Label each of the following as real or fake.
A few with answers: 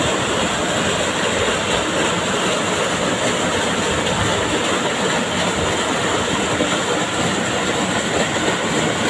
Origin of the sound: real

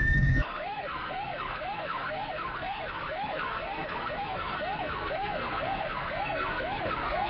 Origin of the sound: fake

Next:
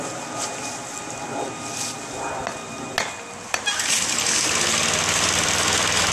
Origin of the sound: real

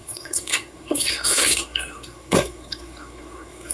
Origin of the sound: fake